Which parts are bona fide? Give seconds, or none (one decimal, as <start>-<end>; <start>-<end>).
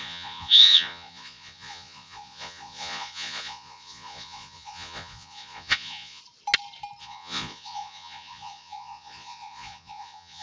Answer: 6.2-7.0